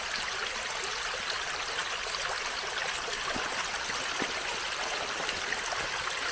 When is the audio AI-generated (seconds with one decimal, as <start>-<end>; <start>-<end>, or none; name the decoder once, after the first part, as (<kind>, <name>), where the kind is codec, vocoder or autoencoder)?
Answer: none